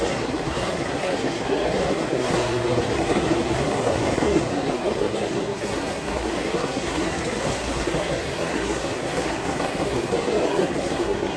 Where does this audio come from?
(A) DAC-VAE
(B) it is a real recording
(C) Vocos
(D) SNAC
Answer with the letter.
D